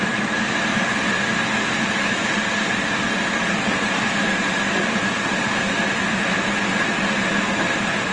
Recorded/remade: recorded